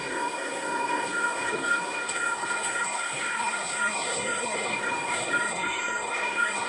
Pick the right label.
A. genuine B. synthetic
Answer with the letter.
B